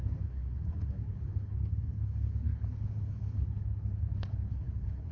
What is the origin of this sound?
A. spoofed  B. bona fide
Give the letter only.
A